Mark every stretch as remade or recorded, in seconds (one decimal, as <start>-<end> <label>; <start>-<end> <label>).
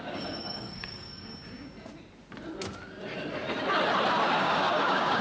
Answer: 0.0-1.3 remade; 1.3-4.4 recorded; 4.4-5.2 remade